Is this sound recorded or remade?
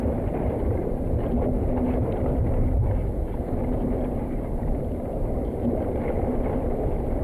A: remade